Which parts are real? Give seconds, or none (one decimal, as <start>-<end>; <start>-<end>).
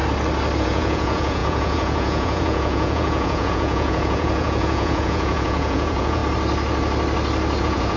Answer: 0.0-0.6; 6.2-7.6